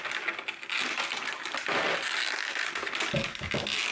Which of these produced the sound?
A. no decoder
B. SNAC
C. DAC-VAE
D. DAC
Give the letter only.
A